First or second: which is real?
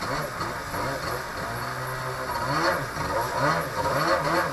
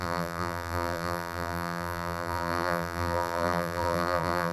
first